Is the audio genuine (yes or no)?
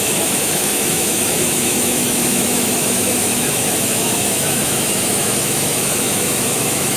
no